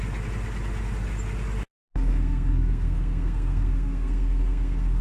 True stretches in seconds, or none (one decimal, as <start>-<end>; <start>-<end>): 0.0-1.7